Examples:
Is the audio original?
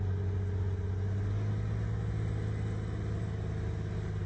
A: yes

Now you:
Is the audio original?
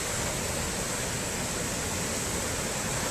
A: yes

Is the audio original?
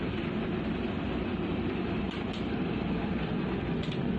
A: no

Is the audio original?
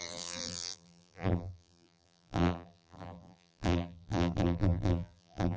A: no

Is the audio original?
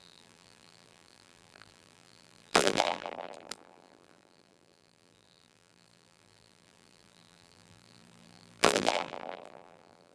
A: no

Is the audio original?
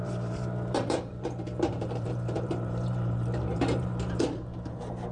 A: no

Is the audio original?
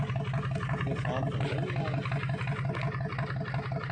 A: yes